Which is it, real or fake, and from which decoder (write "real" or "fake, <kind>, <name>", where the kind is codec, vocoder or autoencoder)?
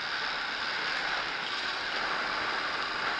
real